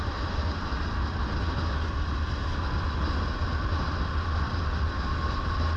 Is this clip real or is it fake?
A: real